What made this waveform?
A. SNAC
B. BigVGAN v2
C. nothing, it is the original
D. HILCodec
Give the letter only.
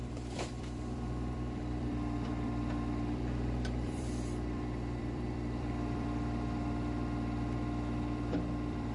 B